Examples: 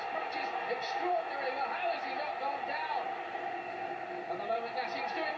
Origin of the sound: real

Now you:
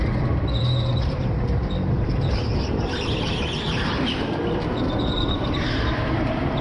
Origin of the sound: fake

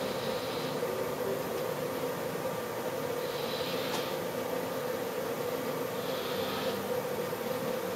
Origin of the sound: real